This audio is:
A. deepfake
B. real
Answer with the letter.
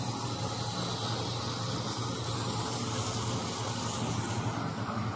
B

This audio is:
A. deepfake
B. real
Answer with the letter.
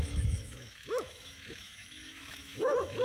A